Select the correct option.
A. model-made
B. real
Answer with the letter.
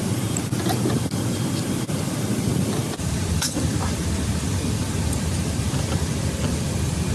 B